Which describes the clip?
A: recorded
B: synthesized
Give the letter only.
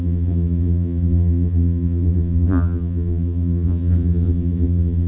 B